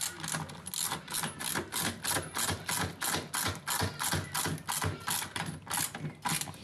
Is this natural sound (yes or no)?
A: yes